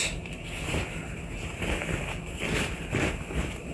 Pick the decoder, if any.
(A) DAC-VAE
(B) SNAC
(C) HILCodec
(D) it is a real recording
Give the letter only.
D